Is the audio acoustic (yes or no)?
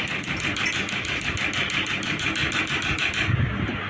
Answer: yes